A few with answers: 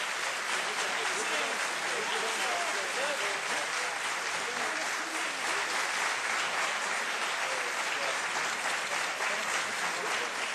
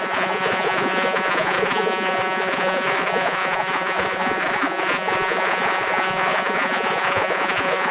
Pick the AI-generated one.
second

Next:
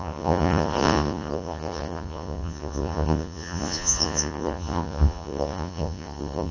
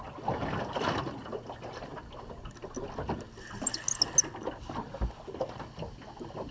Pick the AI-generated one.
first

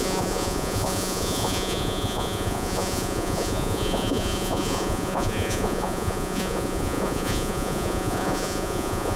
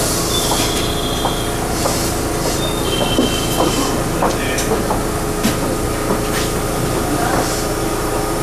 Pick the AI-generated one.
first